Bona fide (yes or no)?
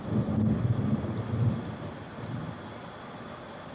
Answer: yes